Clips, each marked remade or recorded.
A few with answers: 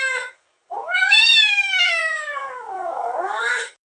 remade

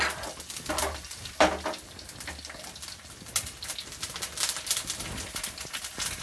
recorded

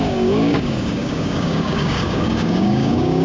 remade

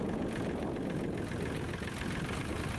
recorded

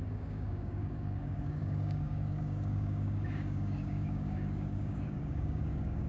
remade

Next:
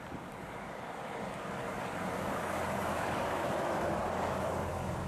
remade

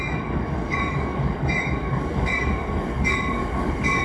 remade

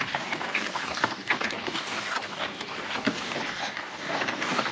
remade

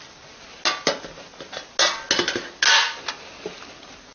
recorded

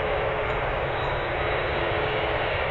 remade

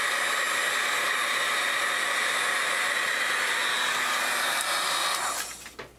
recorded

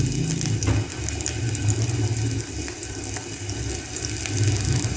recorded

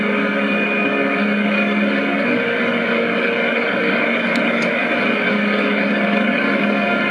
remade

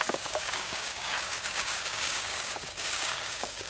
remade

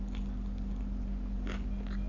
recorded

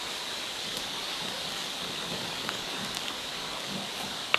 remade